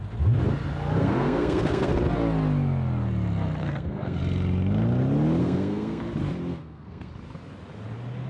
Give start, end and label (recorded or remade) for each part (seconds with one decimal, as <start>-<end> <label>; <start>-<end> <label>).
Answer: 0.0-1.0 recorded; 1.0-1.9 remade; 1.9-3.6 recorded; 3.6-4.2 remade; 4.2-5.4 recorded; 5.4-6.0 remade; 6.0-6.6 recorded; 6.6-7.1 remade; 7.1-8.3 recorded